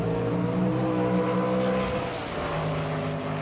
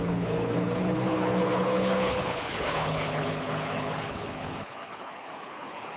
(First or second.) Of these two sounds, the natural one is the first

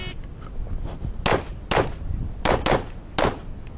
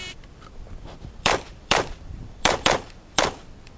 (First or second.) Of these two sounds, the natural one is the first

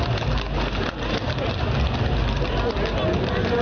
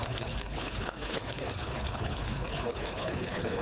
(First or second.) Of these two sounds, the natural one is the first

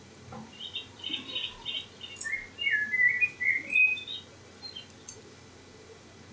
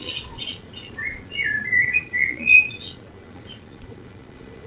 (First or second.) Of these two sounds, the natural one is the first